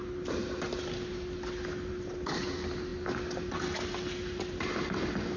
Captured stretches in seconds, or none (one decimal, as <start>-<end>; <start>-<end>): 0.0-5.4